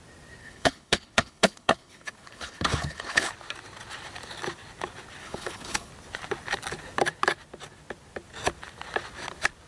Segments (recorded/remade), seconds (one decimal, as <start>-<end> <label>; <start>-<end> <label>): 0.0-0.4 recorded; 0.4-3.3 remade; 3.3-5.2 recorded; 5.2-5.9 remade; 5.9-9.7 recorded